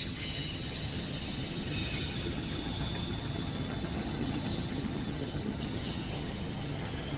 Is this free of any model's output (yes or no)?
no